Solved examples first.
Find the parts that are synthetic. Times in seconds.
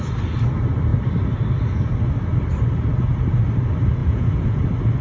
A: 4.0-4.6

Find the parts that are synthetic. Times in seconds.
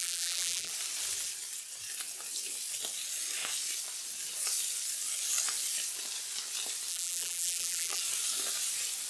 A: 0.0-0.7; 6.9-8.0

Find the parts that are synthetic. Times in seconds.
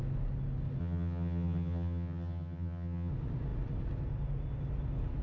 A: 0.8-3.1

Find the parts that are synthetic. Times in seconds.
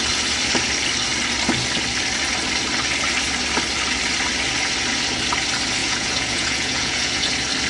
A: 5.8-7.3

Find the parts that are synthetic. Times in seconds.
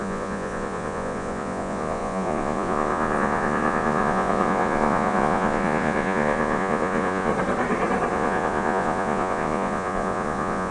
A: 0.0-7.3; 8.1-10.7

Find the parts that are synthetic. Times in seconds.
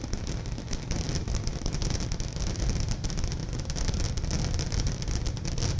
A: 0.0-1.8; 2.6-3.4; 4.4-5.8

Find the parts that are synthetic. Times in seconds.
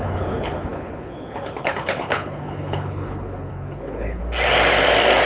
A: 0.0-4.2